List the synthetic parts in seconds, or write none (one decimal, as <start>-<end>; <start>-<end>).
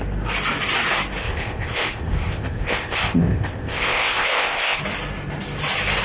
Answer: 1.2-4.8